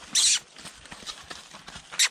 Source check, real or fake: real